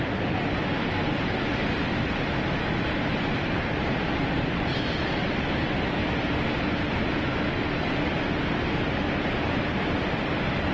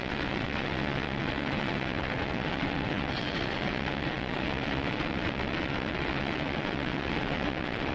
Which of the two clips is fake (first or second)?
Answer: second